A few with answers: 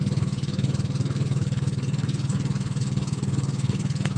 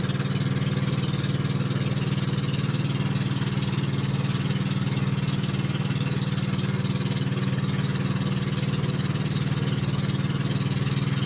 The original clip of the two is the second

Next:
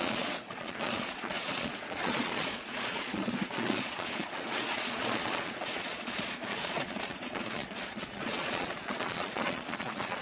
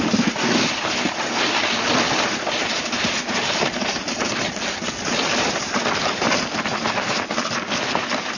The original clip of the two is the second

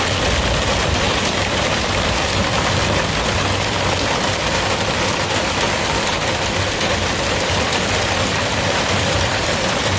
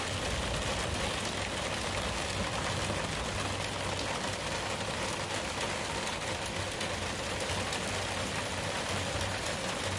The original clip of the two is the second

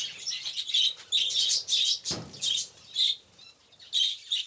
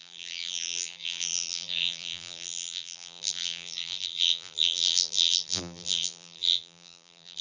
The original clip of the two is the first